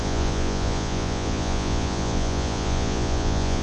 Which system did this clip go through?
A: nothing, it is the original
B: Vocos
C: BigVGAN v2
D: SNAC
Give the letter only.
B